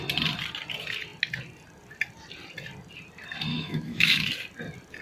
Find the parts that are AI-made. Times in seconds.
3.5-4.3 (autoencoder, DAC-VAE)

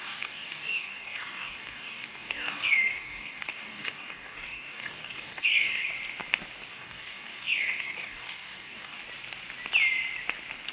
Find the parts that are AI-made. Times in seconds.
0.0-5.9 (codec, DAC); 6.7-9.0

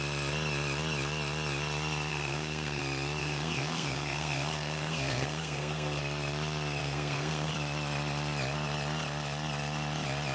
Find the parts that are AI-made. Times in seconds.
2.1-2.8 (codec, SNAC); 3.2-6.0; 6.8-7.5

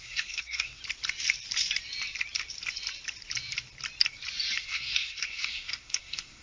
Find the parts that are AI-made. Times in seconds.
0.0-0.8 (codec, SNAC); 4.6-6.4

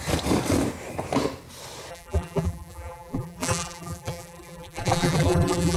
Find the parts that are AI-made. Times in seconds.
1.9-5.8 (vocoder, BigVGAN v2)